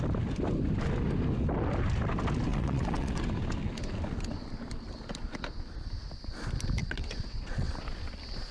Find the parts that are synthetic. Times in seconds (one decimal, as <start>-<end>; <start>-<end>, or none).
2.5-3.2; 6.8-7.7